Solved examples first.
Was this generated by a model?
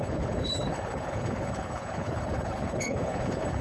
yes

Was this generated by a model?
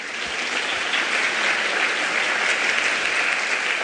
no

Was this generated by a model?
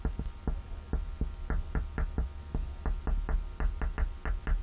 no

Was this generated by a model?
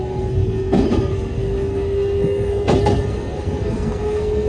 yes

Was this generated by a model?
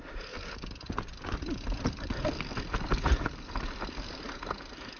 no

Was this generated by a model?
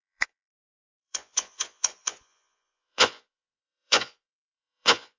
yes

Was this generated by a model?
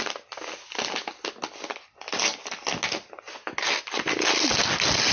no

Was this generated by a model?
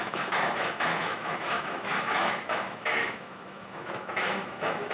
yes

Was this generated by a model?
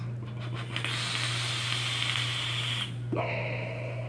no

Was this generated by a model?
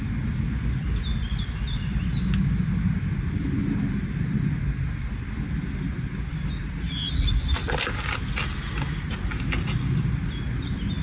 no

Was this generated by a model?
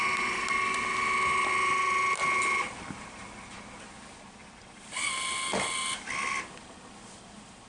no